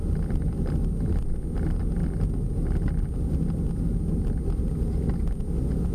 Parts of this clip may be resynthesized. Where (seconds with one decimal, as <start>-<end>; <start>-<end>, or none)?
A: none